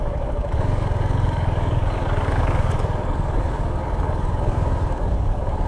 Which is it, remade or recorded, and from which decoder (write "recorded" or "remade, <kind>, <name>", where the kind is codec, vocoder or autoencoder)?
remade, codec, DAC